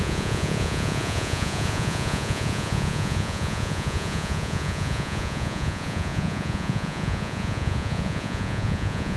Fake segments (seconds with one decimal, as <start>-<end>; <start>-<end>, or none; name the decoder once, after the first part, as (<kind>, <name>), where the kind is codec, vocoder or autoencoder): 0.0-9.2 (vocoder, Vocos)